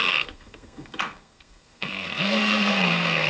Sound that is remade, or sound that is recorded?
remade